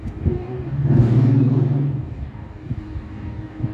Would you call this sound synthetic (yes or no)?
yes